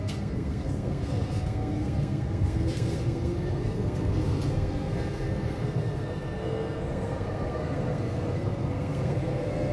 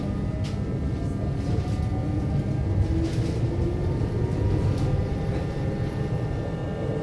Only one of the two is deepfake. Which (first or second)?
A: first